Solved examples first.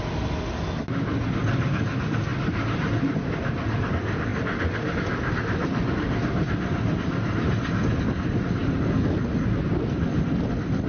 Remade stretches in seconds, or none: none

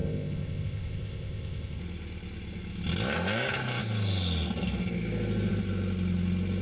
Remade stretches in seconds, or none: 0.0-1.8 (codec, ZipCodec)

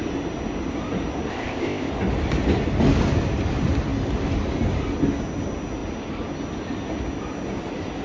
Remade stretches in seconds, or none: 1.3-1.9 (codec, ZipCodec)